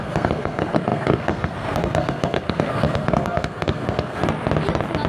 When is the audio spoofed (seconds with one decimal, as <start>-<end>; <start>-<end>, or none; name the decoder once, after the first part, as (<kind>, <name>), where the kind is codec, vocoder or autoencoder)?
0.0-4.2 (codec, SNAC)